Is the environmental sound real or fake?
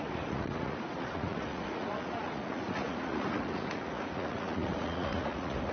fake